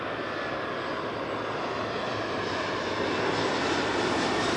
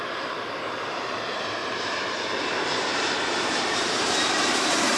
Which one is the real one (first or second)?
first